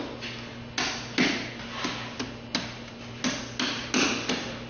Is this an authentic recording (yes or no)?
yes